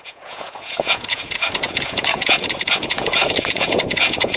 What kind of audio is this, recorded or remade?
remade